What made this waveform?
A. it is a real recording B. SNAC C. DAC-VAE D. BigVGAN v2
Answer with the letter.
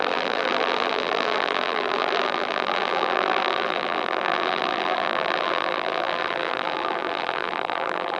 D